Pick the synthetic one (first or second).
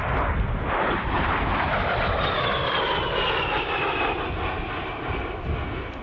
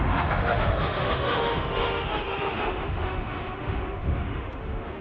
second